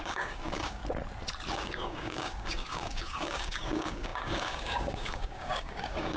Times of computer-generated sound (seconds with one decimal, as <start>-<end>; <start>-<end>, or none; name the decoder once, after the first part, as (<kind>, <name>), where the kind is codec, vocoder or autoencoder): 0.0-0.8 (codec, DAC); 1.5-6.2